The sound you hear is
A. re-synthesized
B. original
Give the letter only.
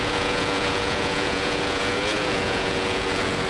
A